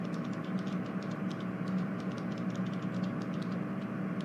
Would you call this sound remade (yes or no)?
no